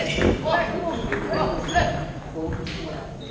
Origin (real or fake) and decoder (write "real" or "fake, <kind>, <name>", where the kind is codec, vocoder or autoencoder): real